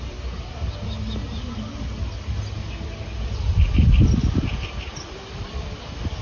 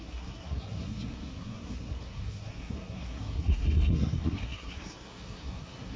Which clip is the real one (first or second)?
first